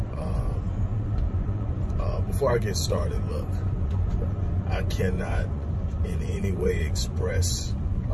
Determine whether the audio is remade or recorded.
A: remade